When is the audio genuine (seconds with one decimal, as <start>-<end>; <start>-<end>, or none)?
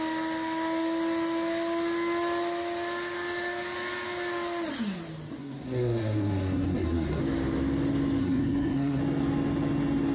0.0-5.4; 7.2-8.2; 9.0-10.1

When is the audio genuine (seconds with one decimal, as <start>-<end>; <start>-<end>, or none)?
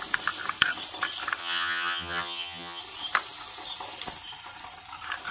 0.0-1.4; 2.8-5.3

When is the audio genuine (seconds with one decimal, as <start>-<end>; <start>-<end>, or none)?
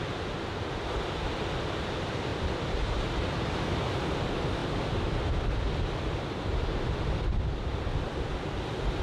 0.0-2.3; 4.0-4.6; 5.6-6.5; 7.3-7.7; 8.5-9.0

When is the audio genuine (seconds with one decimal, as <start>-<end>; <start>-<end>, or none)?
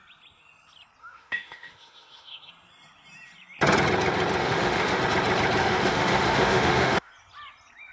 0.0-1.0; 2.5-4.4; 5.0-5.6; 7.1-7.9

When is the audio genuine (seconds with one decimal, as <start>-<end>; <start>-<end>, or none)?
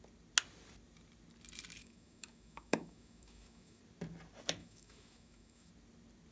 0.0-1.8; 3.8-4.6; 5.7-6.3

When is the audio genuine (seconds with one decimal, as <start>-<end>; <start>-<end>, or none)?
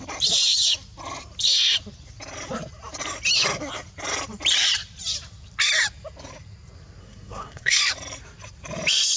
0.0-7.0; 7.8-9.2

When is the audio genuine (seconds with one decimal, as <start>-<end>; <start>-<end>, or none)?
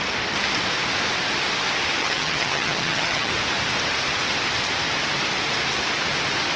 0.0-2.0; 3.3-6.6